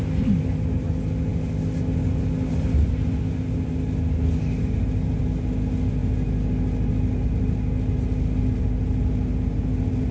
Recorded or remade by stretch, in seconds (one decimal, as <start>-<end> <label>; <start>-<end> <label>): 0.0-10.1 recorded